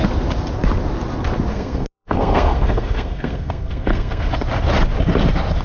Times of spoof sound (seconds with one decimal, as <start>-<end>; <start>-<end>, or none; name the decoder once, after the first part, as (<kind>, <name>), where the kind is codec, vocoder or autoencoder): 1.5-4.3 (codec, SNAC)